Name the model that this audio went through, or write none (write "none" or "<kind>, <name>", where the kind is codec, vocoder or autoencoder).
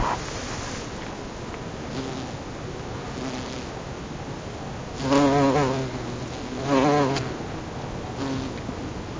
none